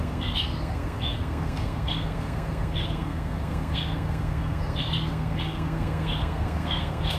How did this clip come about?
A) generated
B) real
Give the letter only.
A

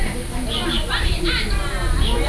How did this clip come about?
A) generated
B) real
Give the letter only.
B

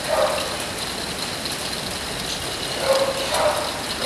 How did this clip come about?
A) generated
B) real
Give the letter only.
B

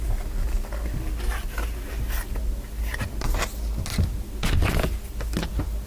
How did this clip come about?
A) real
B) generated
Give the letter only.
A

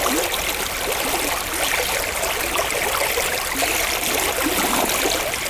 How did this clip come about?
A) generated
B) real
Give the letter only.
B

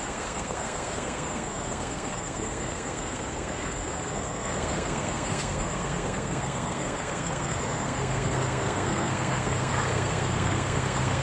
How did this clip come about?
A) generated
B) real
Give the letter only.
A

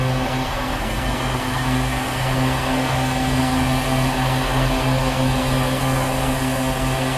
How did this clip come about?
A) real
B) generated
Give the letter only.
B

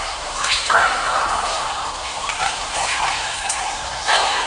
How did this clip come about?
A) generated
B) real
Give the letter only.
A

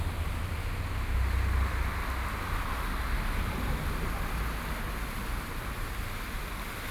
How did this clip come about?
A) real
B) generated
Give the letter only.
A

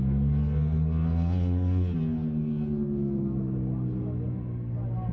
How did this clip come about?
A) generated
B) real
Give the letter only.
B